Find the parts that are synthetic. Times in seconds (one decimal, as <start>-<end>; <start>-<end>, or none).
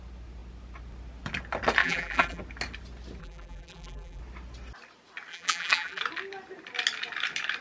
1.8-2.4; 3.2-4.2; 5.3-6.0